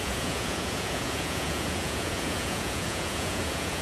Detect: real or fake fake